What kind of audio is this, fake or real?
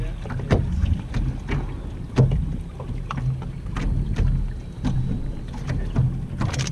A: real